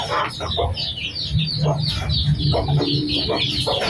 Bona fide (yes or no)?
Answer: no